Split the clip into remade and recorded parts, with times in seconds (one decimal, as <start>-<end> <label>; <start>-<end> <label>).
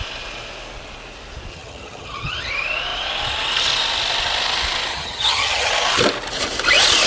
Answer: 0.0-1.5 recorded; 1.5-2.5 remade; 2.5-4.9 recorded; 4.9-5.7 remade; 5.7-7.1 recorded